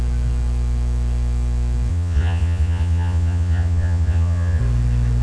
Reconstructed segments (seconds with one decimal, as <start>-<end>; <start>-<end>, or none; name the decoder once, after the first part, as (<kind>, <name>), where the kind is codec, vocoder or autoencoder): 1.9-4.6 (vocoder, Vocos)